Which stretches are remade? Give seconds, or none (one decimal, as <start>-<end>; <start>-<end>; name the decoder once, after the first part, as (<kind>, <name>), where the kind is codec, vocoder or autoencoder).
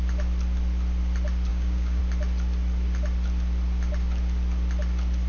1.5-2.0 (codec, DAC)